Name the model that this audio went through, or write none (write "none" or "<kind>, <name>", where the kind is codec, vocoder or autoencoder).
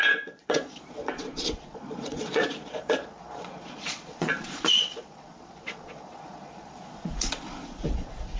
vocoder, Vocos